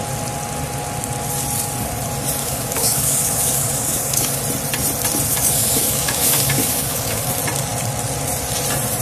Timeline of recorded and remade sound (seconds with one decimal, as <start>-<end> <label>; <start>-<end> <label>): 0.0-2.4 recorded; 2.4-4.4 remade; 4.4-5.3 recorded; 5.3-7.2 remade; 7.2-9.0 recorded